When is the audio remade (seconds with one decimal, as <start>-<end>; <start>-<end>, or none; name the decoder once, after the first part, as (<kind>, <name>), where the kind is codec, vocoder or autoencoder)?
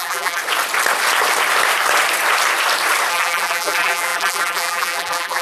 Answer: 0.0-0.4 (vocoder, BigVGAN v2); 3.1-5.4